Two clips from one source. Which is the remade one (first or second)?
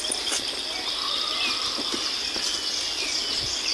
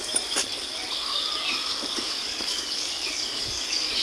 second